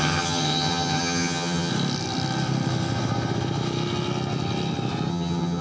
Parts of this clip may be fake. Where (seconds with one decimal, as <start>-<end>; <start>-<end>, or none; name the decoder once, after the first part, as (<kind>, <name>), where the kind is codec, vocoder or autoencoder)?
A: 0.0-1.7 (vocoder, HiFi-GAN); 5.1-5.6